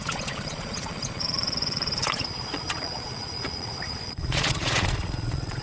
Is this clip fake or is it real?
fake